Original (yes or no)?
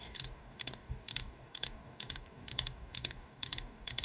no